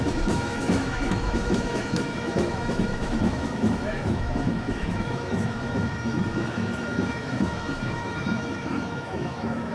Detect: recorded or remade remade